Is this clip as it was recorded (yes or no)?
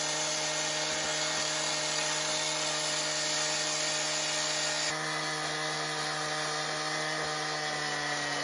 yes